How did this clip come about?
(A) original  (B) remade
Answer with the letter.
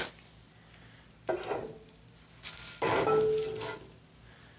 A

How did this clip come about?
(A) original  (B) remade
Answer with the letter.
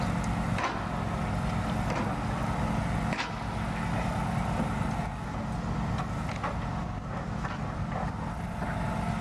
A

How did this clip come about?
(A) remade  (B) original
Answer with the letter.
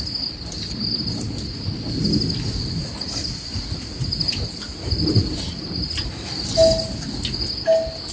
B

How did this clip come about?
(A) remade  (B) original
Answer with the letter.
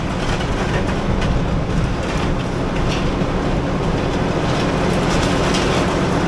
B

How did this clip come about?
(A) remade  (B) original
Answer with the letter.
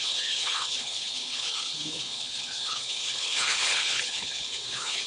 A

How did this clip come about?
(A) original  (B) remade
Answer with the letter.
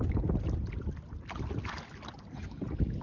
A